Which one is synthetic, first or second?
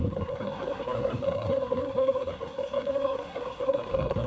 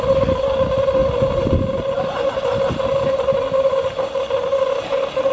first